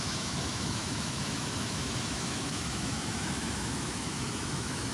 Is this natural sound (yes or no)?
no